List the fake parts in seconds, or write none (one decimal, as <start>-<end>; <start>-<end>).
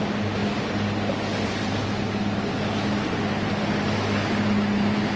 none